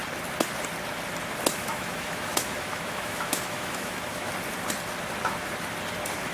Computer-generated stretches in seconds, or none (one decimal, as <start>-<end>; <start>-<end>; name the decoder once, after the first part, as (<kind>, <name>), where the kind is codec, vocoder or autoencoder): 1.6-4.3 (autoencoder, DAC-VAE)